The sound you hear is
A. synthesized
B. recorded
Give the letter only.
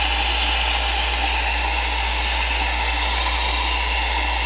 B